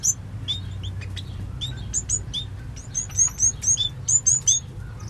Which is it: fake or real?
real